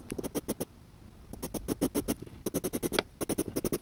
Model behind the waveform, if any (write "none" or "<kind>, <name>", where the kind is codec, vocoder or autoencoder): none